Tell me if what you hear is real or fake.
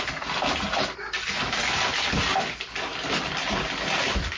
real